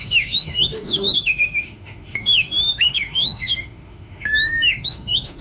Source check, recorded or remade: remade